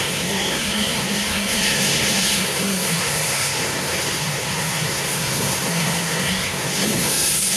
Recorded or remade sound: remade